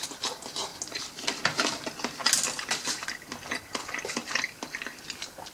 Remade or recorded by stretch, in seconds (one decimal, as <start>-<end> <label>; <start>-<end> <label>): 0.0-5.5 recorded